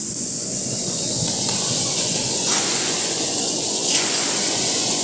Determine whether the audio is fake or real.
fake